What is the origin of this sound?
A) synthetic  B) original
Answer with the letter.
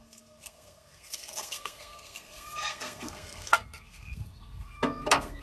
A